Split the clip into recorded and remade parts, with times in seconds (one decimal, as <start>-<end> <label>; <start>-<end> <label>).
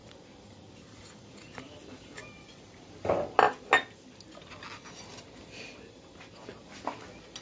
0.0-2.8 remade; 2.8-7.4 recorded